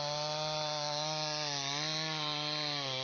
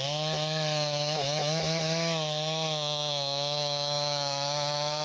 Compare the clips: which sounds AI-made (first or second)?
second